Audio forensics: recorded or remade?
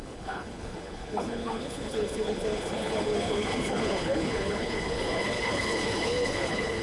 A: remade